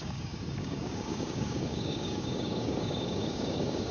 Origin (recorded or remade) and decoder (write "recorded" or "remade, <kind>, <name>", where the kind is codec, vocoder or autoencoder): remade, codec, DAC